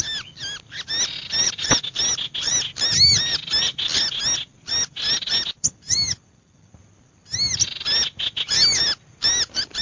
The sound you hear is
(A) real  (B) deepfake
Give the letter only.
A